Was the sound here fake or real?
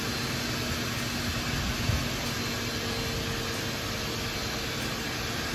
real